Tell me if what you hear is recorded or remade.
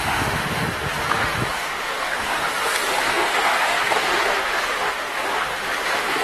remade